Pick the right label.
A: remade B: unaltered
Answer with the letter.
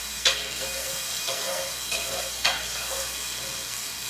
A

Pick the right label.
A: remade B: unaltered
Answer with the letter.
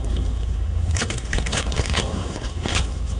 A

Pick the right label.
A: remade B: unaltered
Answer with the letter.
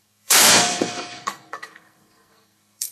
A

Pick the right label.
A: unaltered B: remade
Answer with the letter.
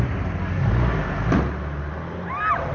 A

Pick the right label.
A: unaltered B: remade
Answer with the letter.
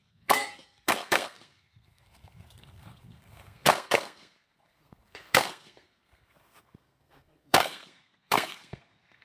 B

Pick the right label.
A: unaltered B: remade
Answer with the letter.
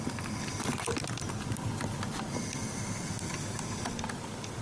A